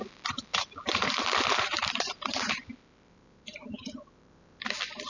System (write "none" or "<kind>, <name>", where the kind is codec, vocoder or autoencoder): vocoder, BigVGAN v2